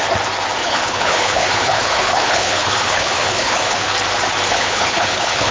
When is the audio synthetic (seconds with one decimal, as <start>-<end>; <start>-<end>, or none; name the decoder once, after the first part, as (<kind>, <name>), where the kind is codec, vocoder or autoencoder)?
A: 0.6-3.9 (codec, HILCodec); 4.5-5.5